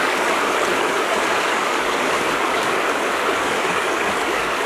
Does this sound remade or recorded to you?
remade